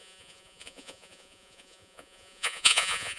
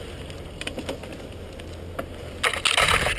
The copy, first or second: first